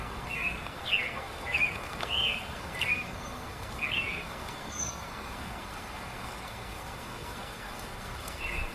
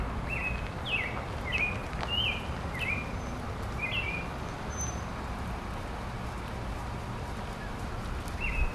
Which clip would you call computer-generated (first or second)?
first